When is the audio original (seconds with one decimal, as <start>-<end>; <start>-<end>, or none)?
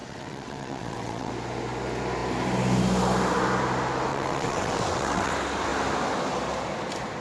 1.3-4.1; 5.3-7.2